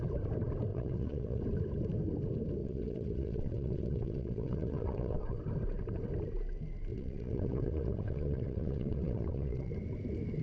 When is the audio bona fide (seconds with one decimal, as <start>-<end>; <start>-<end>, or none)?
0.0-0.7; 1.4-2.6; 5.4-6.9; 9.7-10.4